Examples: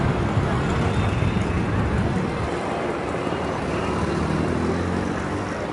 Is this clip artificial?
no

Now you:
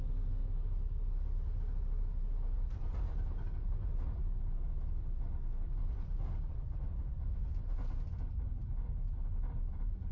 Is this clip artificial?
no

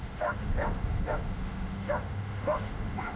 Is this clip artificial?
yes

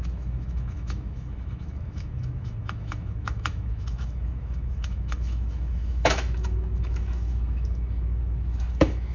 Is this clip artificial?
yes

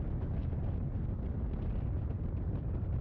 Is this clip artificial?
no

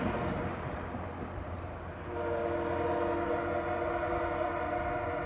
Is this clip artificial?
no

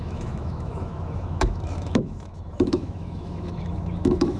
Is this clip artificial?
yes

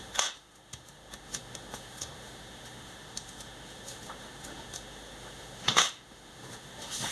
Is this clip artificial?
yes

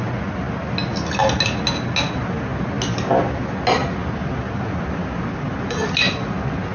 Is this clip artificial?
no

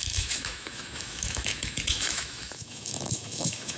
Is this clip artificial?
yes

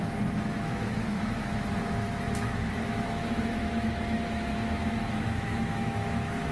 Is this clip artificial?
yes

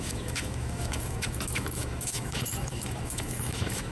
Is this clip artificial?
yes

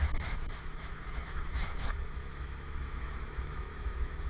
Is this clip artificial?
yes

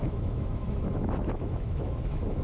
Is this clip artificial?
yes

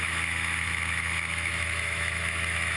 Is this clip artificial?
yes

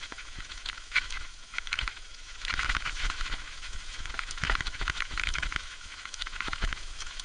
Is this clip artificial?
yes